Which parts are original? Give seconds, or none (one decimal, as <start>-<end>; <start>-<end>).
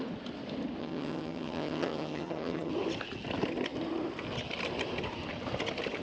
0.0-0.8; 2.7-6.0